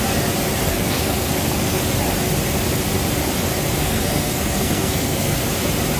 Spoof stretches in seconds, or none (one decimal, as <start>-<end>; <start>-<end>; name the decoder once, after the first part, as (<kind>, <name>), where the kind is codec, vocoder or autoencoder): 0.6-1.8 (codec, SNAC); 3.8-5.4